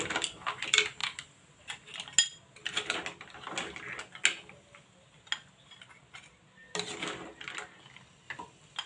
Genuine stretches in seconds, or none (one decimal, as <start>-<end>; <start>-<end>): 0.0-8.9

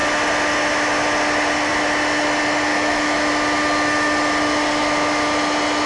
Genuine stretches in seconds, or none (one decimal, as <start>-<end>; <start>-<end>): 0.0-2.7; 3.3-5.9